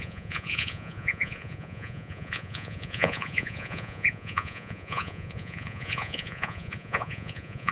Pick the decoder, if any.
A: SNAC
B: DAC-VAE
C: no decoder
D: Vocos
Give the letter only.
D